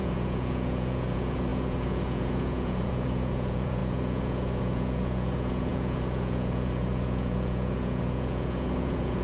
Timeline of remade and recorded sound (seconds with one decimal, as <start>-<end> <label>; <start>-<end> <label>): 0.0-9.2 remade

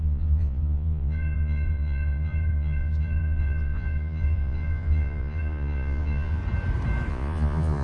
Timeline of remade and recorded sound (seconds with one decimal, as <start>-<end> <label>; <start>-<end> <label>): 0.0-6.4 remade; 6.4-7.1 recorded; 7.1-7.8 remade